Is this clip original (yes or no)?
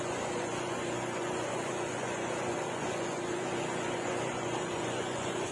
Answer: no